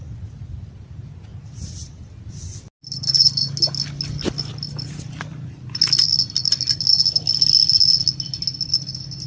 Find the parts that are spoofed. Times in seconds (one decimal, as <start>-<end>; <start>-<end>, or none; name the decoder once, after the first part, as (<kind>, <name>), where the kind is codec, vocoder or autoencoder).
1.3-2.1 (vocoder, BigVGAN v2)